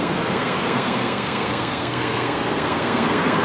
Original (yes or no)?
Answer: no